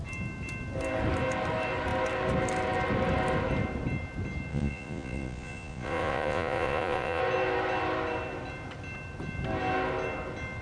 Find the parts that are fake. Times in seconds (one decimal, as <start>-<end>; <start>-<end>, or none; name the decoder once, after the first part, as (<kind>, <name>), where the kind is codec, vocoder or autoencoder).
4.5-7.2 (vocoder, Vocos)